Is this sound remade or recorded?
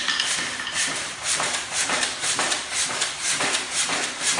remade